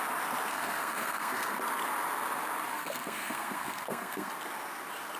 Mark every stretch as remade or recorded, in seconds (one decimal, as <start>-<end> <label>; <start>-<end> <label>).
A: 0.0-0.5 recorded; 0.5-1.6 remade; 1.6-2.7 recorded; 2.7-4.3 remade; 4.3-5.2 recorded